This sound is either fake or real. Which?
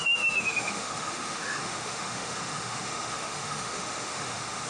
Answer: fake